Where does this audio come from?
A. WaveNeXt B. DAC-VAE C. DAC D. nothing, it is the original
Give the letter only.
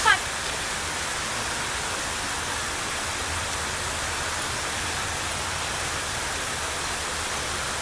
D